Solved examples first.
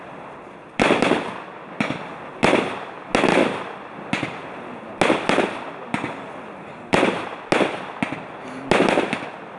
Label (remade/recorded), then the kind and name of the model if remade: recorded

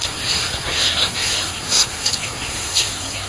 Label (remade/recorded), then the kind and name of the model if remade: remade, codec, SNAC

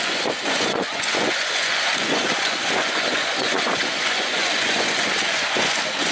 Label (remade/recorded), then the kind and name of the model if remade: remade, vocoder, Vocos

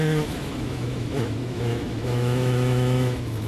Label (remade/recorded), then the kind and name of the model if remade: remade, autoencoder, DAC-VAE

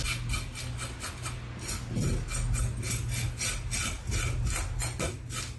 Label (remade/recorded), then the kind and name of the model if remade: recorded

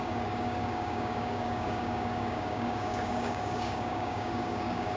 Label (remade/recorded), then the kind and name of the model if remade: remade, codec, DAC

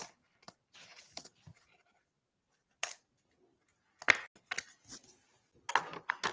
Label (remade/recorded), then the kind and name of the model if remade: recorded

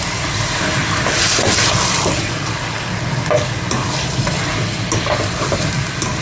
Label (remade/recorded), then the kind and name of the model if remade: recorded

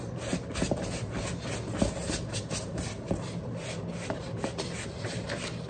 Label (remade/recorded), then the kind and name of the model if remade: recorded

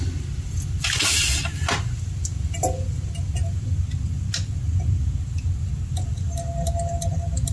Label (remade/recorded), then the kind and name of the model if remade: recorded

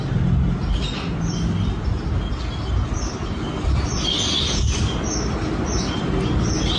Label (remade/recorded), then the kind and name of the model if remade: recorded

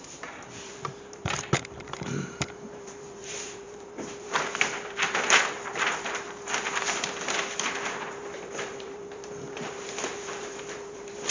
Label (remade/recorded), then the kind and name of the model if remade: remade, vocoder, BigVGAN v2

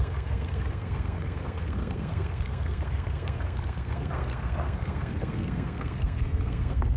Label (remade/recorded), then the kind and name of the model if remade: remade, codec, SNAC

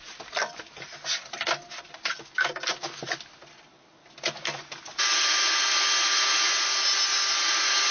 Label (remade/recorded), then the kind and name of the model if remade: recorded